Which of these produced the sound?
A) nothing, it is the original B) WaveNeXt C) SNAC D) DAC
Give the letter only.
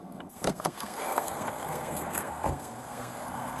C